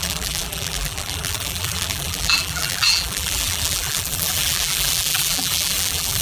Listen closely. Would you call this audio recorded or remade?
remade